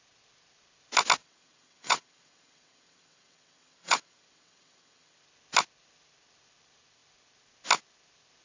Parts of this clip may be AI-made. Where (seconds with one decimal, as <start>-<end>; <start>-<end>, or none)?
1.2-5.2